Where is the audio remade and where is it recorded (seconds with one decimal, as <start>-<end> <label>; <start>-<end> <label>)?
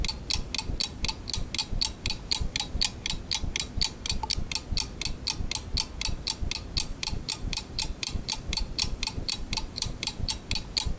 0.0-6.9 recorded; 6.9-10.3 remade; 10.3-11.0 recorded